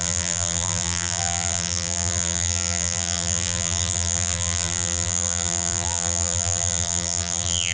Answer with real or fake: fake